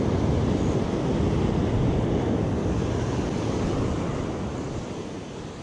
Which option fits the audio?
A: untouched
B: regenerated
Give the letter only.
A